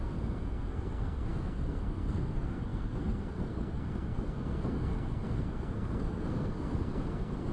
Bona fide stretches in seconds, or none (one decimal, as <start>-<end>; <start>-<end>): none

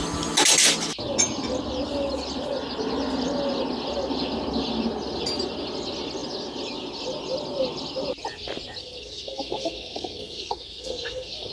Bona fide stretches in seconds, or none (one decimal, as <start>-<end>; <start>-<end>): 0.0-8.8

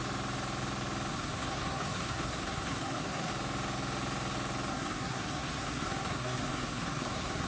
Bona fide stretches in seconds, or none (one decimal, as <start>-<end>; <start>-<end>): 0.0-1.1; 3.3-4.7

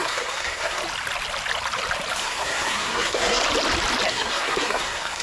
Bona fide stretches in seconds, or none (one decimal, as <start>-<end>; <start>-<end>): 0.8-2.2; 3.4-4.1

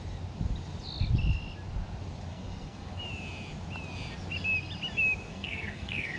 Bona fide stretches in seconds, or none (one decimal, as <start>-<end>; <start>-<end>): 0.0-2.3; 3.0-5.3

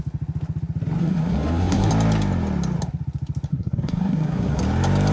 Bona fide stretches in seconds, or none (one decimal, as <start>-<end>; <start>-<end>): 0.0-1.0; 1.9-3.5; 4.6-5.1